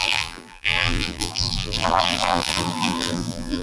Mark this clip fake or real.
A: fake